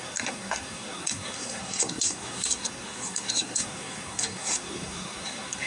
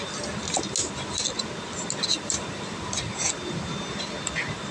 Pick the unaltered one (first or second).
second